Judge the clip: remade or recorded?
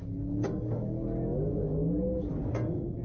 recorded